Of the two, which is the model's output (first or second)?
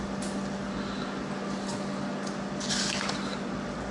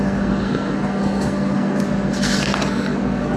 second